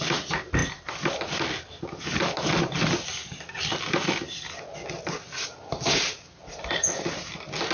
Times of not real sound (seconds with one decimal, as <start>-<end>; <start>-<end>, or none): none